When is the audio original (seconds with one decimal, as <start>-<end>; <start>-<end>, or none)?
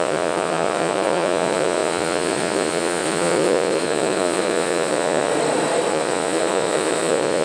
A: 5.3-5.9